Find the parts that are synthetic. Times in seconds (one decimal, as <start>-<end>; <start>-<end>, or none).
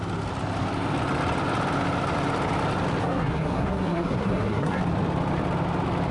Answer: 3.0-4.8